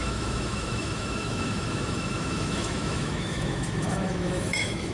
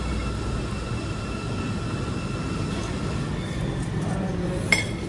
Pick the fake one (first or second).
first